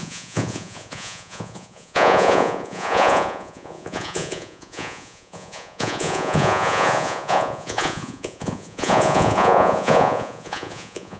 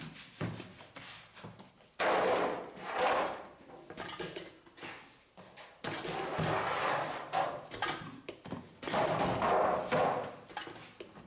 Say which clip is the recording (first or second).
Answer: second